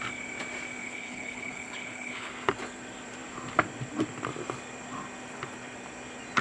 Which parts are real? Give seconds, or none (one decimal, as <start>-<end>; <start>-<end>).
0.0-0.8; 2.3-6.4